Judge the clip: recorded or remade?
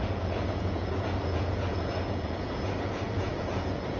remade